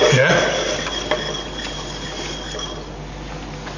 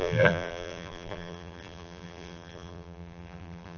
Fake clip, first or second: second